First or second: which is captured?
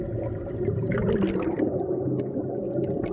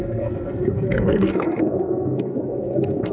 first